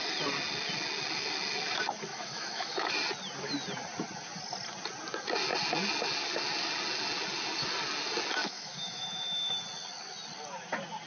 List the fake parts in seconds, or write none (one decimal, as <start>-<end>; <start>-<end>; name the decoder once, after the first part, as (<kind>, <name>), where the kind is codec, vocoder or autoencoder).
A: 2.1-2.9 (autoencoder, DAC-VAE); 8.4-9.5